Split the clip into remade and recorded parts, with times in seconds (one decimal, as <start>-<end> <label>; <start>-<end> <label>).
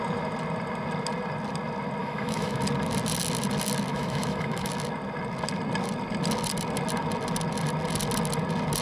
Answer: 0.0-2.0 recorded; 2.0-2.6 remade; 2.6-3.9 recorded; 3.9-4.7 remade; 4.7-8.8 recorded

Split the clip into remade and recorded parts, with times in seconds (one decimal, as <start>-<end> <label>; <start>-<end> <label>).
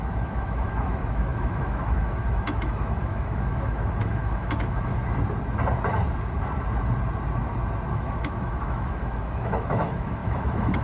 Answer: 0.0-4.9 remade; 4.9-7.9 recorded; 7.9-10.8 remade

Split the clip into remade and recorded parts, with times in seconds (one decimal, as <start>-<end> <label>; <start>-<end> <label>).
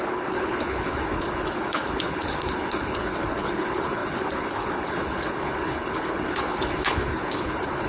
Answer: 0.0-7.9 remade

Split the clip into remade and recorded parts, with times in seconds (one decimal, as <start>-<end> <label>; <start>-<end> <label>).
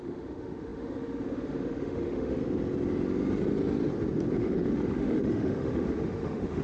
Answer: 0.0-2.4 remade; 2.4-4.4 recorded; 4.4-6.6 remade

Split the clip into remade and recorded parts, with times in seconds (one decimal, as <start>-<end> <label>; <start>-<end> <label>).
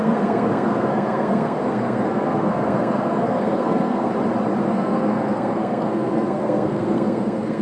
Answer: 0.0-4.1 remade; 4.1-4.6 recorded; 4.6-7.6 remade